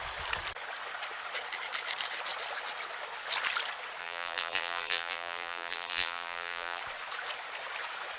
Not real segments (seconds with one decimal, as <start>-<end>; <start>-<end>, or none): 4.0-6.8